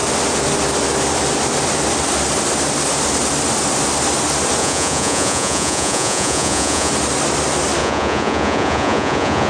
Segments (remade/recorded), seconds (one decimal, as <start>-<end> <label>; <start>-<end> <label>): 0.0-4.6 recorded; 4.6-6.9 remade; 6.9-7.8 recorded; 7.8-9.5 remade